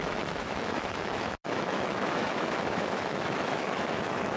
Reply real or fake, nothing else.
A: fake